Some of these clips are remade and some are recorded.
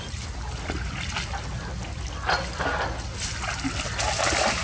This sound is recorded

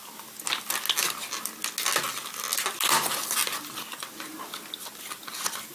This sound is recorded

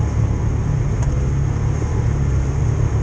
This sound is recorded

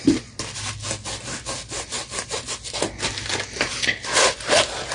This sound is recorded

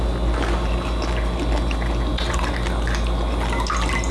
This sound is recorded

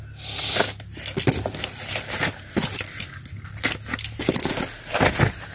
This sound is recorded